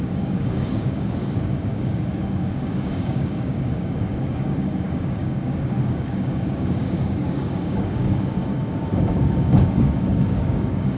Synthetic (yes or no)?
yes